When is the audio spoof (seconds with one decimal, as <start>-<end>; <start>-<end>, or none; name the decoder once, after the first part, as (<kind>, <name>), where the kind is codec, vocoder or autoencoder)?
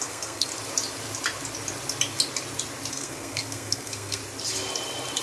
0.0-0.5 (codec, SNAC); 2.9-4.2